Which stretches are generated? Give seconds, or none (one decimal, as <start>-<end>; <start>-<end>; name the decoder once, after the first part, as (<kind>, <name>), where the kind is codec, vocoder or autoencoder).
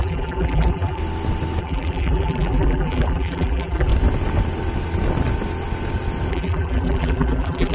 0.0-1.0 (vocoder, BigVGAN v2); 1.6-3.9; 6.3-7.7